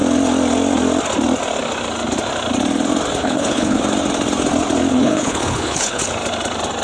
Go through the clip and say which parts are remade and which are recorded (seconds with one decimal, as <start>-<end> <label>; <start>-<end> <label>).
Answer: 0.0-3.2 recorded; 3.2-3.8 remade; 3.8-4.9 recorded; 4.9-6.0 remade; 6.0-6.8 recorded